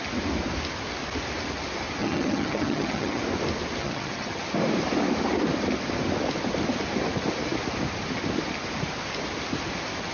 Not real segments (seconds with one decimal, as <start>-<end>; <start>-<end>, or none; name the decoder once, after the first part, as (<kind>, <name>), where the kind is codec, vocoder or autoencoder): 2.0-3.2 (vocoder, HiFi-GAN); 3.8-4.4